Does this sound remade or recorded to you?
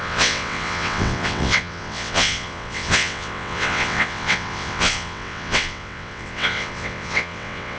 remade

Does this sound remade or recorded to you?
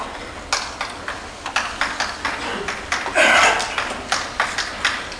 recorded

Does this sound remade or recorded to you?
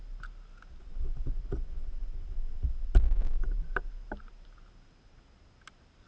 recorded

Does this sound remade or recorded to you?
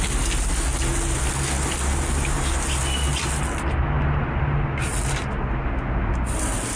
recorded